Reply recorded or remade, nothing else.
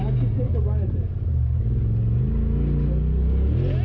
recorded